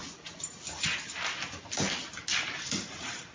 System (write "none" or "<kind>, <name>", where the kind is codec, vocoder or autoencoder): none